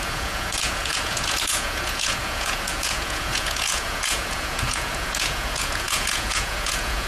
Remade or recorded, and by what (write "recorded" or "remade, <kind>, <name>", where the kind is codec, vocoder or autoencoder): remade, vocoder, Vocos